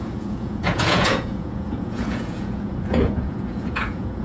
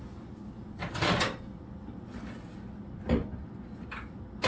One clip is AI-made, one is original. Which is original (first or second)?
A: second